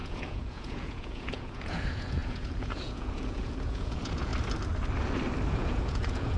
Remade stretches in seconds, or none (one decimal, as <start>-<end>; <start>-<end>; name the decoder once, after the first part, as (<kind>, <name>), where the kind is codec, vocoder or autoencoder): 0.0-4.3 (vocoder, Vocos); 5.5-6.4

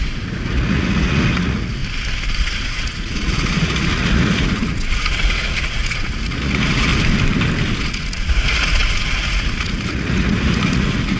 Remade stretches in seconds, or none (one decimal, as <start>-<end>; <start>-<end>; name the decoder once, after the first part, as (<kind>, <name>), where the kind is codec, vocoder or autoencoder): 0.0-1.8 (vocoder, Vocos); 2.4-6.9; 7.8-11.2

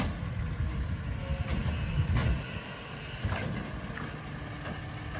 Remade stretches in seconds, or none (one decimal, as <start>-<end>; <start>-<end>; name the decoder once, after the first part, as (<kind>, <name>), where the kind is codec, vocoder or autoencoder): none

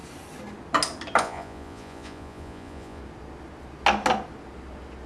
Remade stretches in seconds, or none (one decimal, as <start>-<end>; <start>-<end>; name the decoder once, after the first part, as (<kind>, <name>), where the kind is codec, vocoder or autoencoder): 1.2-3.0 (vocoder, Vocos)

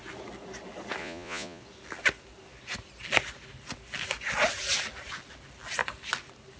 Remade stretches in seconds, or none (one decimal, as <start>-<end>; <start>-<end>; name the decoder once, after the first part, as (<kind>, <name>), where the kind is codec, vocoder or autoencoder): 1.0-1.6 (vocoder, Vocos)